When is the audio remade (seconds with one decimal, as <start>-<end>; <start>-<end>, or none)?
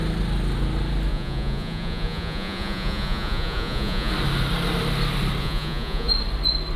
1.1-4.1; 5.4-6.1